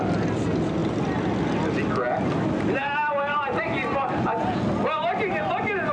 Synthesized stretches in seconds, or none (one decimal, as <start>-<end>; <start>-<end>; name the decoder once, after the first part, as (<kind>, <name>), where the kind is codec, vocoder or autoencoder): none